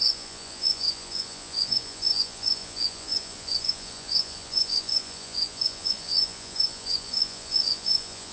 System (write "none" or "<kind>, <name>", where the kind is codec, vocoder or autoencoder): vocoder, Vocos